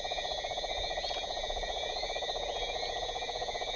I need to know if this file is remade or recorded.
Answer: remade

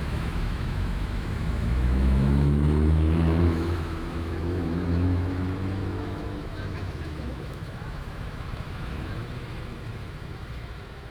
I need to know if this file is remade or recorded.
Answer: remade